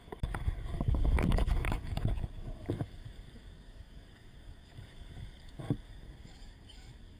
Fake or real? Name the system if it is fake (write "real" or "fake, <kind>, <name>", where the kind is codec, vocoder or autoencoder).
fake, codec, DAC